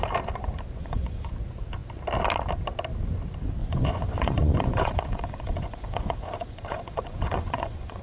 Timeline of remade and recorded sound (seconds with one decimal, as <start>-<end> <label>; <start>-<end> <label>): 0.0-0.8 recorded; 0.8-1.3 remade; 1.3-3.6 recorded; 3.6-8.0 remade